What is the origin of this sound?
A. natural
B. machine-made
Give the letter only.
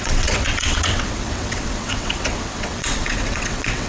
B